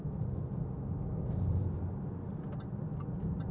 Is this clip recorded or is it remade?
recorded